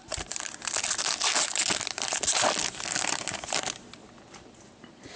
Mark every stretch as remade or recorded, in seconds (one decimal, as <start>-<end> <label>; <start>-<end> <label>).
0.0-5.2 recorded